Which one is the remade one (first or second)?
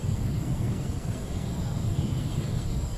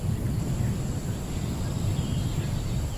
first